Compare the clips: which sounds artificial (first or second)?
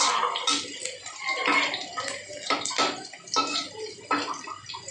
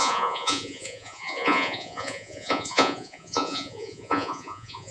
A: second